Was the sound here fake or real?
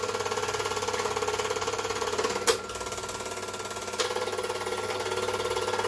real